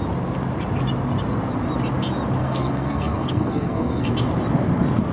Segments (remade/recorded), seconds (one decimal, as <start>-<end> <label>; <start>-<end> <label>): 0.0-2.4 recorded; 2.4-4.1 remade; 4.1-5.1 recorded